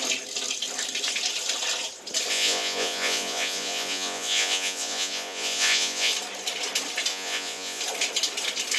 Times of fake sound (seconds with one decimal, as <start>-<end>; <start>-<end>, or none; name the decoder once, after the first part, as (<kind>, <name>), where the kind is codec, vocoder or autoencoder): 2.3-6.1 (vocoder, Vocos); 7.1-7.8